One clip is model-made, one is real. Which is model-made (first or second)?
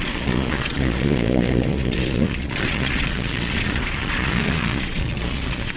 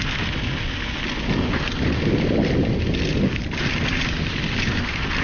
first